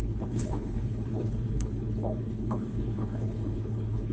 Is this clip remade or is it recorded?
remade